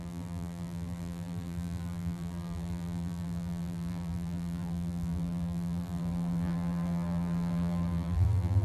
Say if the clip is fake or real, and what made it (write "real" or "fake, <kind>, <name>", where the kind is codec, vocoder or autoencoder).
fake, vocoder, BigVGAN v2